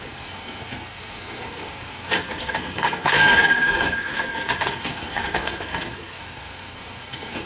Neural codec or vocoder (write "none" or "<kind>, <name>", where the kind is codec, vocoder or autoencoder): codec, SNAC